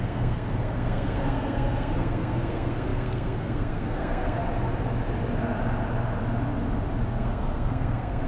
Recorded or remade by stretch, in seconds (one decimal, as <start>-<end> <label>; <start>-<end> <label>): 0.0-4.4 remade; 4.4-7.1 recorded; 7.1-8.3 remade